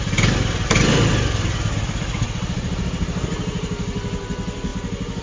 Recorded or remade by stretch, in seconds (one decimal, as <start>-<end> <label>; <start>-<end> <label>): 0.0-5.2 recorded